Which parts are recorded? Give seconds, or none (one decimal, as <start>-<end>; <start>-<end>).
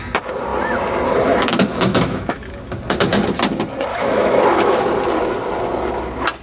0.0-1.9; 2.5-3.9; 4.8-6.4